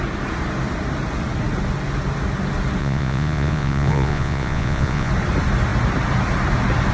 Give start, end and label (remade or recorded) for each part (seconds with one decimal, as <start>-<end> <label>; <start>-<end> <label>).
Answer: 0.0-2.8 recorded; 2.8-5.1 remade; 5.1-6.9 recorded